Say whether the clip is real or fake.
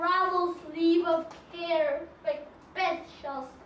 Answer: real